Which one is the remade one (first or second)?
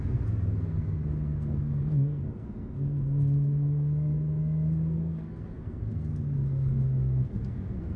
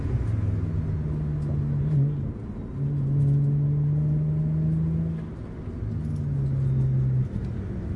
first